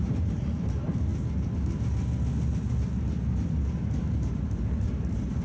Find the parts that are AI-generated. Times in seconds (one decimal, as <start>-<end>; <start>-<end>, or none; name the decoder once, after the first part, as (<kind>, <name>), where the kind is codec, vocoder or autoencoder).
0.0-1.1 (vocoder, BigVGAN v2); 4.3-5.4